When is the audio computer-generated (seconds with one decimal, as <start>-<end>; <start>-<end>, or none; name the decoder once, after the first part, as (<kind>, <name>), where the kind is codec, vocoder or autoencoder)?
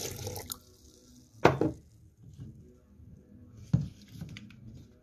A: none